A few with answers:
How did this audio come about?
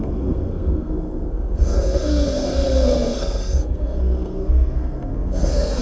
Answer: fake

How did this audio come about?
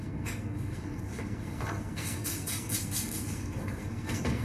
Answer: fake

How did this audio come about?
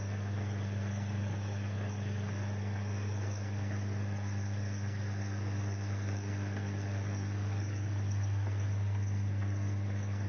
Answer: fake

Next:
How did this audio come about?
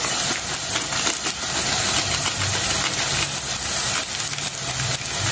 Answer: real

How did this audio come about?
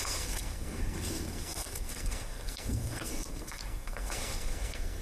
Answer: fake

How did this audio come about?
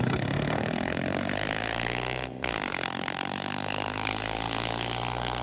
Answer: fake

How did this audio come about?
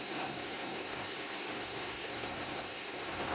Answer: fake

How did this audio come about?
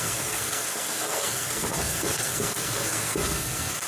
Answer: fake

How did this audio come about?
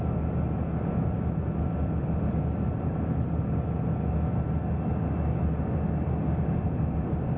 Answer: real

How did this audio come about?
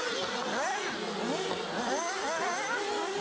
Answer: real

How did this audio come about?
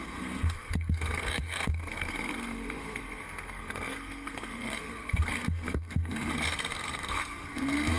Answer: fake